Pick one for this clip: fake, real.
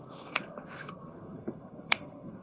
fake